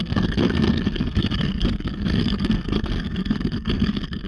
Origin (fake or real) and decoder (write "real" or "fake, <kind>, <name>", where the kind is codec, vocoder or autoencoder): fake, codec, SNAC